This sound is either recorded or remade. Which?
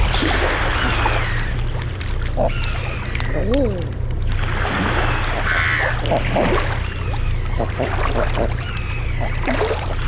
recorded